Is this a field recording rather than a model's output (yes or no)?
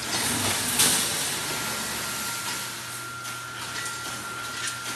yes